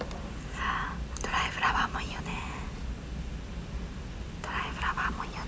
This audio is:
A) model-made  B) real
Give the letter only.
B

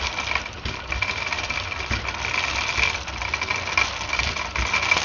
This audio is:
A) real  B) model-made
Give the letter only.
A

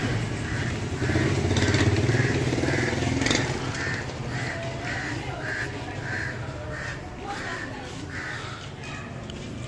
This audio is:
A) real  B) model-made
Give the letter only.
A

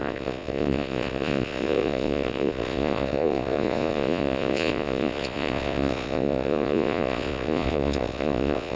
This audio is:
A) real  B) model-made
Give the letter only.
B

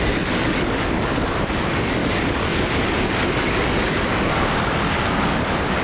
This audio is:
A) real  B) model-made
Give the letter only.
B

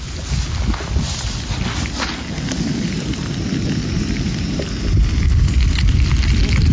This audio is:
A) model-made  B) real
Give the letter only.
B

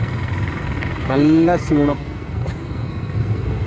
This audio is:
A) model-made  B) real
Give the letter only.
A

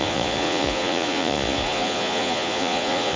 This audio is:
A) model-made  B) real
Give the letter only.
A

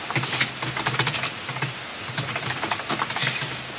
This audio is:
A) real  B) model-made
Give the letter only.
A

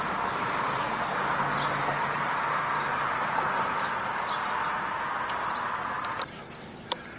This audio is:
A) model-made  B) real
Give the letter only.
B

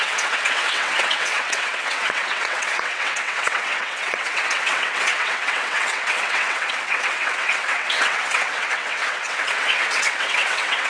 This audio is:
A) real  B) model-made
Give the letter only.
B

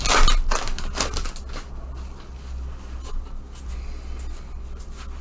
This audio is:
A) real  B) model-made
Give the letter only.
A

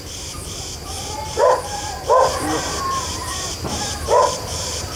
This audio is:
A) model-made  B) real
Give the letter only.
A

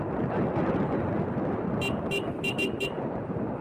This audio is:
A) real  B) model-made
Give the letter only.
A